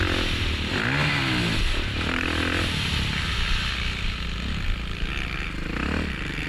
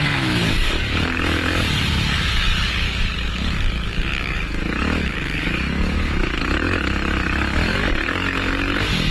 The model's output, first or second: second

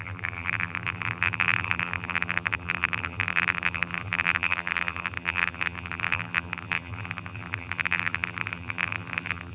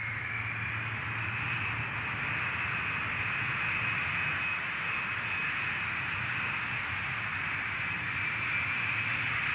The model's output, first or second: first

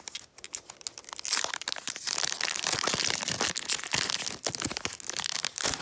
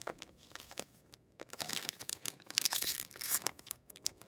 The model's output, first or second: second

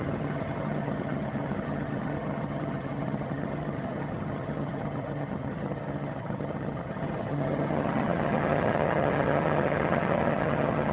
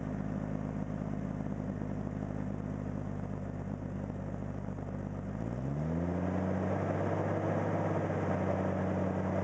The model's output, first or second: first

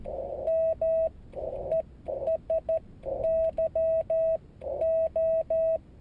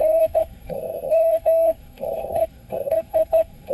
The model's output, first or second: second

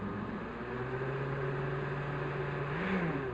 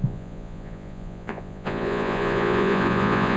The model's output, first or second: second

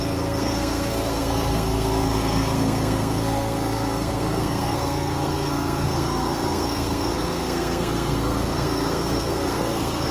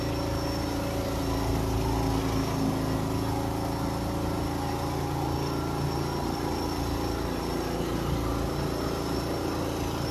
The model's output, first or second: first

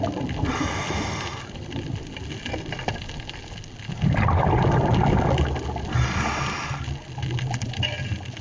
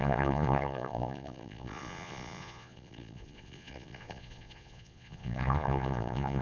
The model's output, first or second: second